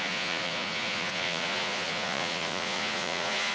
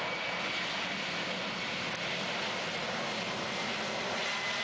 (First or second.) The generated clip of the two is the first